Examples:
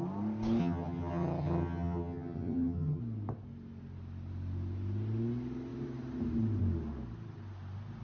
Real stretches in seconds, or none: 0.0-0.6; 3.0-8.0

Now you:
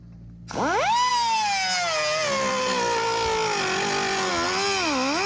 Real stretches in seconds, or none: 0.0-5.3